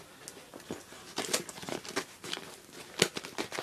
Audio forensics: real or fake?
real